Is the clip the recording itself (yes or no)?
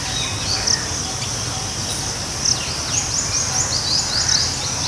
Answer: yes